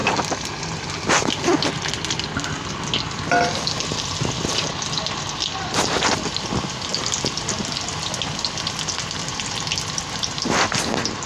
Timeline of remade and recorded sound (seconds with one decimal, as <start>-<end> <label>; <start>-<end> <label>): 0.0-11.3 recorded